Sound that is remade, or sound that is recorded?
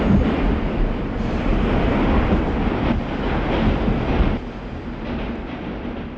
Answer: recorded